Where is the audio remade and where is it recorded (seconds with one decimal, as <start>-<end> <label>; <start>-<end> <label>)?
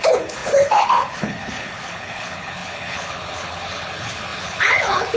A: 0.0-5.2 remade